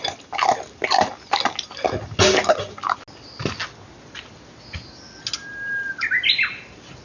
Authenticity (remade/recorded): recorded